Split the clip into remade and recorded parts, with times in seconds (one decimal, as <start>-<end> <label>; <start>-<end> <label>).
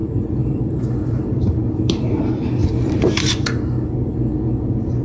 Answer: 0.0-2.2 remade; 2.2-2.6 recorded; 2.6-3.5 remade; 3.5-5.0 recorded